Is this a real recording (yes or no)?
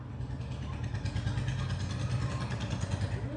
yes